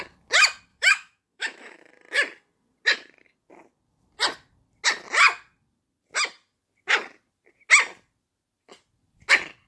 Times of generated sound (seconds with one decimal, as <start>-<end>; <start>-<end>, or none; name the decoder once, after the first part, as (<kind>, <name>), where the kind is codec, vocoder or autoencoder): 0.7-1.9 (autoencoder, DAC-VAE)